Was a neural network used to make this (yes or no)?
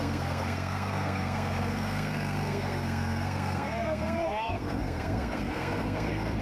yes